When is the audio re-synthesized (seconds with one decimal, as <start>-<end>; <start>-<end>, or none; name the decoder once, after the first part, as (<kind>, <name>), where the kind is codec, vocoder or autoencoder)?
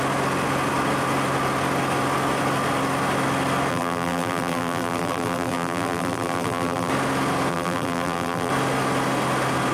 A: 3.7-6.9 (vocoder, BigVGAN v2); 7.5-8.5